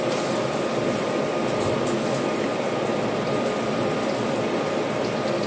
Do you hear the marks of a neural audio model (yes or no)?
no